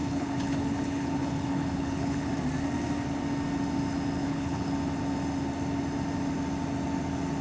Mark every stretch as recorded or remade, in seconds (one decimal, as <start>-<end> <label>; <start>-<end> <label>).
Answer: 0.0-2.3 remade; 2.3-4.2 recorded; 4.2-4.7 remade; 4.7-7.4 recorded